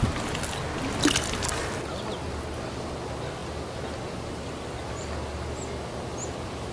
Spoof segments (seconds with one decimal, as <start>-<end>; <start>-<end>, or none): none

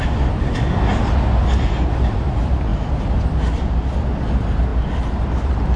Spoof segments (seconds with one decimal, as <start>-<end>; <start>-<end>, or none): none

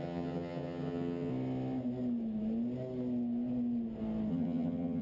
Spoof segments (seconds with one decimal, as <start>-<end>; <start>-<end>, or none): 0.0-1.3; 4.3-5.0

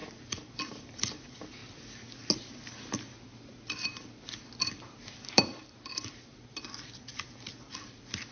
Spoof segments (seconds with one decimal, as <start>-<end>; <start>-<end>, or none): 0.5-1.6; 4.7-8.3

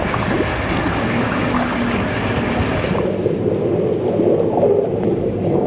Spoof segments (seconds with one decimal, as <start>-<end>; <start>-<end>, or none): 0.0-0.5; 1.0-1.7; 5.1-5.7

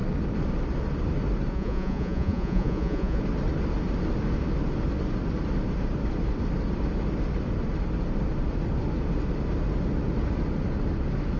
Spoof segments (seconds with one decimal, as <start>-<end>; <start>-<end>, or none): 1.5-3.2

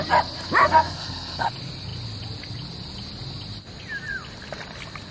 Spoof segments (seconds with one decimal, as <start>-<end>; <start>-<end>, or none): 0.6-1.5